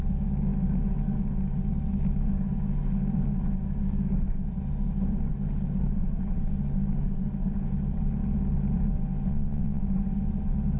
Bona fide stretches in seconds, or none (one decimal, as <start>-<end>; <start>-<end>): 0.0-9.3; 9.8-10.8